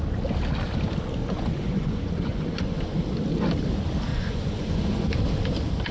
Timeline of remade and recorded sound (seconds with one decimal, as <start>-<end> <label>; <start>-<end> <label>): 0.0-1.2 recorded; 1.2-2.9 remade; 2.9-4.1 recorded; 4.1-5.1 remade; 5.1-5.9 recorded